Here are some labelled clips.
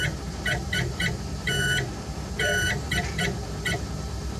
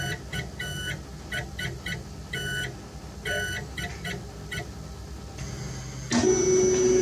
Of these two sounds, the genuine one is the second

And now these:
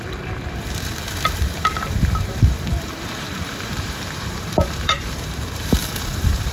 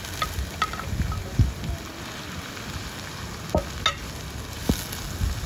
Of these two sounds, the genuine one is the second